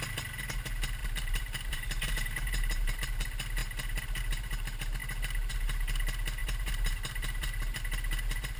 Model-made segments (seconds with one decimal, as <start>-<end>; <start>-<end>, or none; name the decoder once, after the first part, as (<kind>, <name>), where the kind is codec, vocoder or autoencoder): 1.0-3.0 (vocoder, BigVGAN v2); 6.4-7.8

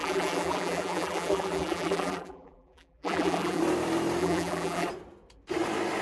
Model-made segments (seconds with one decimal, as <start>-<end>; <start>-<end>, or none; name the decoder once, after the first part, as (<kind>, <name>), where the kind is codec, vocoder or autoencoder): 0.0-3.6 (vocoder, BigVGAN v2); 4.2-4.9

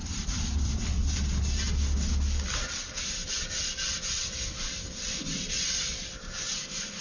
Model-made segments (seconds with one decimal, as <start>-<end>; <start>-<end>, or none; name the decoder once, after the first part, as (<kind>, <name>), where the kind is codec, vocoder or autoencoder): 0.0-1.3 (vocoder, BigVGAN v2); 3.2-6.5

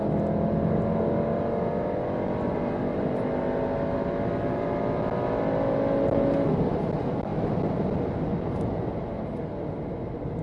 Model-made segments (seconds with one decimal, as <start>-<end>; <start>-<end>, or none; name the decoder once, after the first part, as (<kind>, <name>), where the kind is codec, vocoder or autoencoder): none

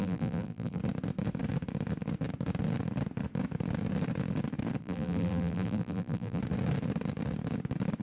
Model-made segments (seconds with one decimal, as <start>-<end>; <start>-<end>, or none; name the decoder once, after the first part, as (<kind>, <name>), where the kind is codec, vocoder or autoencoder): 0.0-0.8 (vocoder, BigVGAN v2); 4.8-6.4